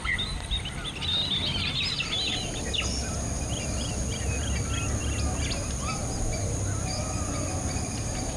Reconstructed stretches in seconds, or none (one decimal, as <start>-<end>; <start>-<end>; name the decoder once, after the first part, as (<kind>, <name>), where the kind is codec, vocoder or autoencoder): none